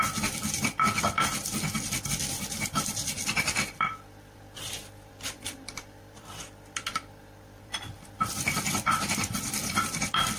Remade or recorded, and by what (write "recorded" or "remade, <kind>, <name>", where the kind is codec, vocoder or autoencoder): remade, vocoder, BigVGAN v2